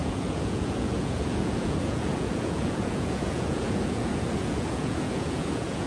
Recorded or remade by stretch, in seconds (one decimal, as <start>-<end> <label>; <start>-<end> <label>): 0.0-5.9 remade